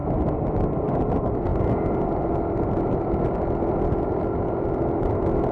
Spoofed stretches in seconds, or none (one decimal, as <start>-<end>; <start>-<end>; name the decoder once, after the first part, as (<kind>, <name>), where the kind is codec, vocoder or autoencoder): none